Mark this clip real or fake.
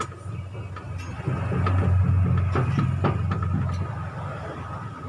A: real